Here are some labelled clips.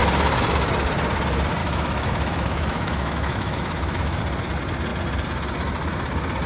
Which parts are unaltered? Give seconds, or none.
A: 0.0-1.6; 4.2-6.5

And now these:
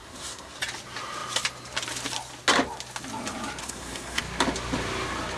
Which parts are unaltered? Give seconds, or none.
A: 0.6-3.6; 4.2-5.4

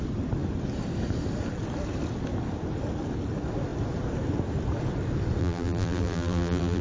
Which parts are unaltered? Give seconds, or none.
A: 0.0-5.4

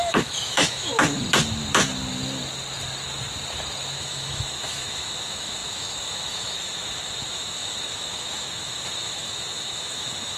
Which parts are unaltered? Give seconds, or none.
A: 0.9-4.0